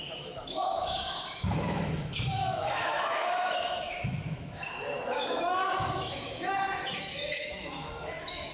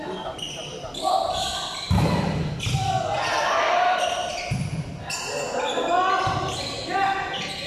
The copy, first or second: first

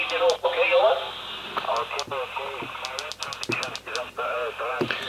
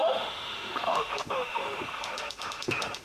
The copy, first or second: second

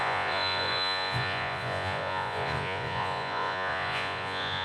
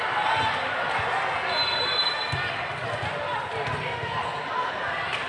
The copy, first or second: first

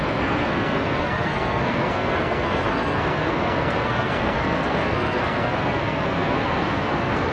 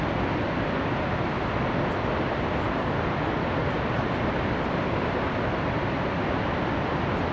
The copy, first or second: first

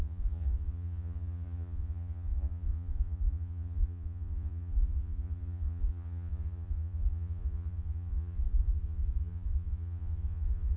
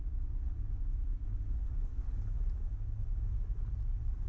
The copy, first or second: first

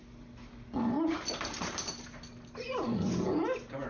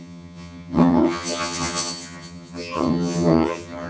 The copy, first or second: second